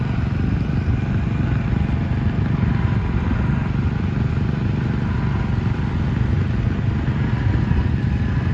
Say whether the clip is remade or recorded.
recorded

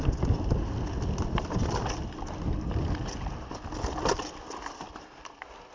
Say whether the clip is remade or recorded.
recorded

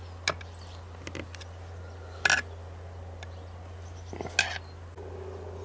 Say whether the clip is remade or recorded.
recorded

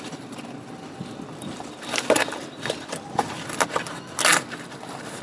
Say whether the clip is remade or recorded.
recorded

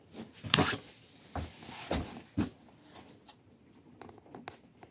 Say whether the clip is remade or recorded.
recorded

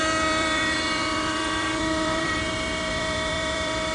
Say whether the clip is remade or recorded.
remade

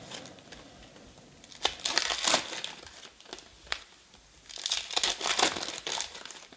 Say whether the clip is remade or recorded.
recorded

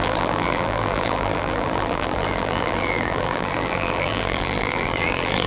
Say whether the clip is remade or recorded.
remade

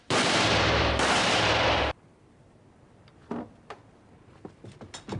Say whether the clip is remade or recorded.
remade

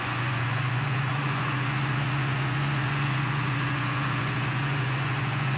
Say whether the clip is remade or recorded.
remade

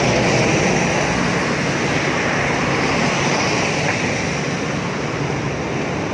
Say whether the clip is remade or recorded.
recorded